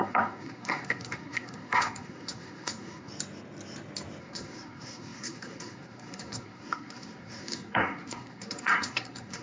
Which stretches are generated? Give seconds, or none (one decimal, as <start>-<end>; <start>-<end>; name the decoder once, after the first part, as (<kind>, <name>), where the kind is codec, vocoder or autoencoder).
0.0-3.1 (codec, SNAC); 4.2-9.4